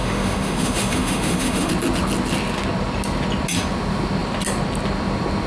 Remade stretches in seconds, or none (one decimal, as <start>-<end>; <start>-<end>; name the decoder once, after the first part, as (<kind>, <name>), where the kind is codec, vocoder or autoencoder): 0.0-1.7 (autoencoder, DAC-VAE)